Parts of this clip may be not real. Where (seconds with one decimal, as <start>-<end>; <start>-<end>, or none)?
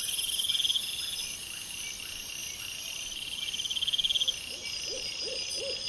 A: none